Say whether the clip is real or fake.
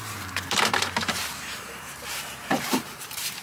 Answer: fake